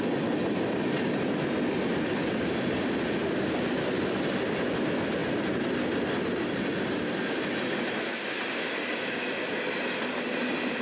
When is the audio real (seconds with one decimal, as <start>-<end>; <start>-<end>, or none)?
0.0-10.8